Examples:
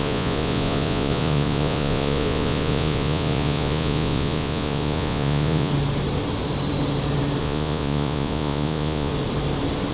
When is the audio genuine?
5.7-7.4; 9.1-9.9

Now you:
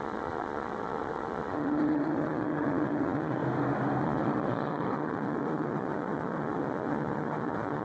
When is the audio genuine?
3.4-4.0

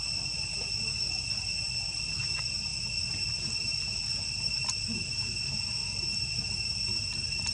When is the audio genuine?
0.0-7.5